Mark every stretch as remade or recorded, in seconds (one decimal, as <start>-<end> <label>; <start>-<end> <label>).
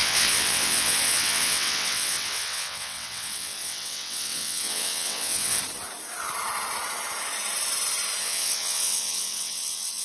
0.0-5.6 remade; 5.6-8.2 recorded; 8.2-10.0 remade